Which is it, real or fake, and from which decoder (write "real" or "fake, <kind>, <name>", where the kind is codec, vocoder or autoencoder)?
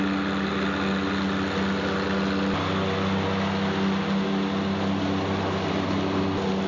real